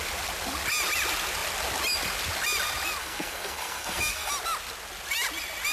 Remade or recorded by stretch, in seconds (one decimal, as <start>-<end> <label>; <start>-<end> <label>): 0.0-3.0 recorded; 3.0-4.3 remade; 4.3-5.7 recorded